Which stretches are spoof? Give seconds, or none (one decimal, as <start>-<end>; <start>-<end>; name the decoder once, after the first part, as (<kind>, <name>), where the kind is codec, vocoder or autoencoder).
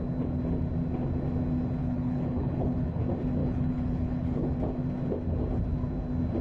1.8-3.0 (codec, HILCodec); 3.4-4.5